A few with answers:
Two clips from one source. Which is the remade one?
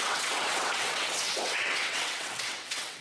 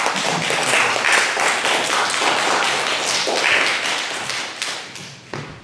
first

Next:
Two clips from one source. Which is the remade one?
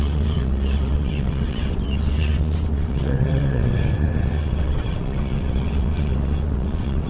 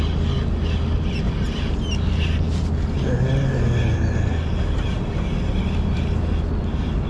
first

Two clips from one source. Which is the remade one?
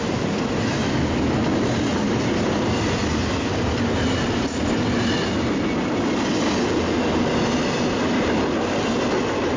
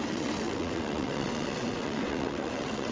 second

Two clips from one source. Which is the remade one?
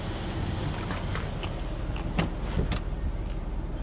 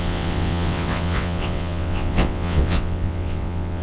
second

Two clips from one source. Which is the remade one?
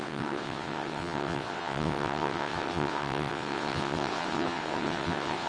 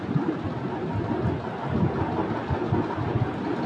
first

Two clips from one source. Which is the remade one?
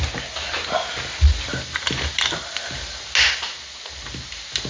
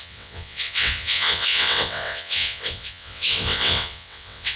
second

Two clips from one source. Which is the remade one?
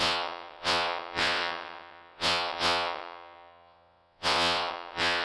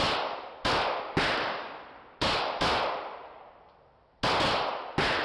first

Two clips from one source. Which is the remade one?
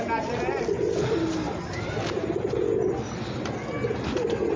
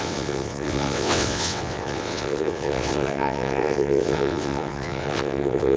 second